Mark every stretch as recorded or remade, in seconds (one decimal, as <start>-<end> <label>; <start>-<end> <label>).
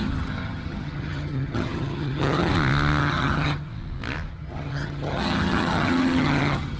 0.0-2.5 remade; 2.5-3.0 recorded; 3.0-3.7 remade; 3.7-4.3 recorded; 4.3-6.8 remade